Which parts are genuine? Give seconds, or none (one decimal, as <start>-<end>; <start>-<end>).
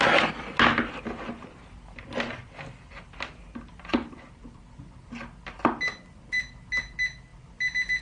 0.0-8.0